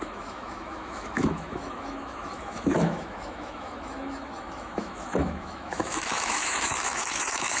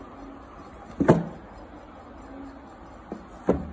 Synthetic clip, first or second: first